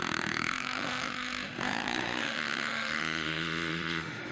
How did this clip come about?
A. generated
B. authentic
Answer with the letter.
A